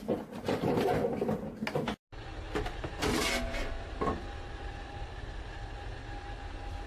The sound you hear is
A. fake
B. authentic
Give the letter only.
B